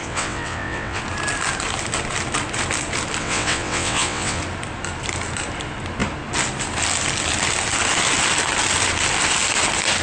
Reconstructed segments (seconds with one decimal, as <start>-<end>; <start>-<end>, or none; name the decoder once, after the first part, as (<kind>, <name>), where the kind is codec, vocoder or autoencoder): 0.0-1.0 (vocoder, WaveNeXt); 3.2-4.4